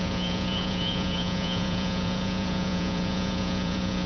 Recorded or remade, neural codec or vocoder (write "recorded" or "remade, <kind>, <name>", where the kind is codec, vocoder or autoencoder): remade, vocoder, Vocos